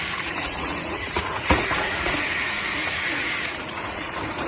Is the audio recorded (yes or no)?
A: no